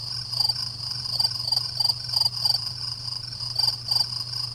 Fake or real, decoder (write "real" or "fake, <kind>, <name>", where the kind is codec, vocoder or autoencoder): real